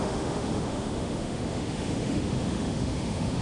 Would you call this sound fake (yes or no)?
yes